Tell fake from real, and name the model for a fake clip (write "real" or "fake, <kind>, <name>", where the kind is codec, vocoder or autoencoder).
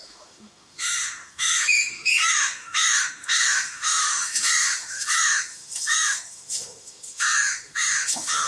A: fake, autoencoder, DAC-VAE